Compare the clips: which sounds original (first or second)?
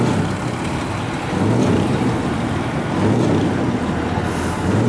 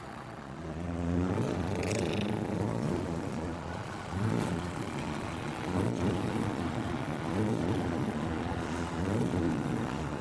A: first